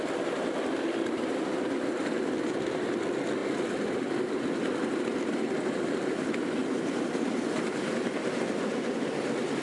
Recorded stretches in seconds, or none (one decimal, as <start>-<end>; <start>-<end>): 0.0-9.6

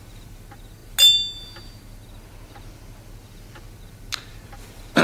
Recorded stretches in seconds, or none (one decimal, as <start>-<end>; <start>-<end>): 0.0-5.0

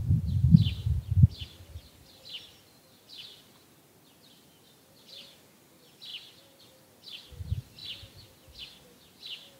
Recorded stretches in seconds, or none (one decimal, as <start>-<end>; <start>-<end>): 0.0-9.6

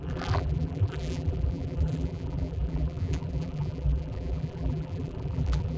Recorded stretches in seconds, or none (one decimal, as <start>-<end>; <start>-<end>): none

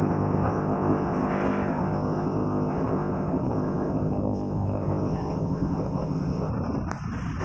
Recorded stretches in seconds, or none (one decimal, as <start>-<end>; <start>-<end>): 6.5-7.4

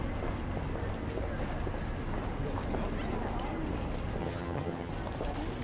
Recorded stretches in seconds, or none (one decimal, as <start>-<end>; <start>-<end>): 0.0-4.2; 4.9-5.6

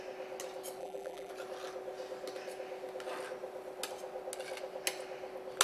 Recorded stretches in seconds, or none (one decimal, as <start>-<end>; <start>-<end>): 0.0-0.8; 1.3-5.6